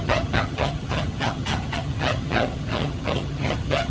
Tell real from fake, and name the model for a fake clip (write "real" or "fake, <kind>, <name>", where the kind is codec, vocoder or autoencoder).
fake, vocoder, HiFi-GAN